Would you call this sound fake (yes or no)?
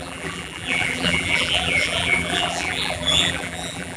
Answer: yes